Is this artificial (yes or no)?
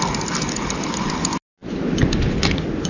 no